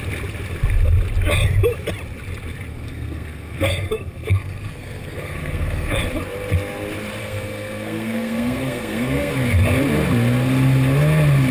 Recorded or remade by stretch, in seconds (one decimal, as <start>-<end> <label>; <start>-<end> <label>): 0.0-2.7 recorded; 2.7-6.0 remade; 6.0-7.2 recorded; 7.2-9.3 remade; 9.3-11.5 recorded